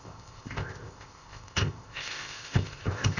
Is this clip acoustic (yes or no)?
no